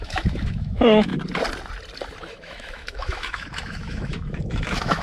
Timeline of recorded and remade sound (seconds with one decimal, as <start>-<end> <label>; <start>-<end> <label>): 0.0-1.1 remade; 1.1-2.3 recorded; 2.3-5.0 remade